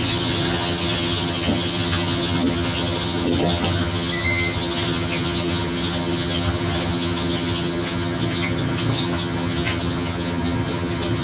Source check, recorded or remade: remade